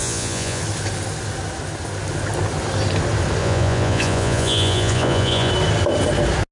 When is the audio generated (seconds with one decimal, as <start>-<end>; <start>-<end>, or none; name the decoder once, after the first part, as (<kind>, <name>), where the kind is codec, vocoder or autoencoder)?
0.0-0.6 (vocoder, Vocos); 3.4-5.5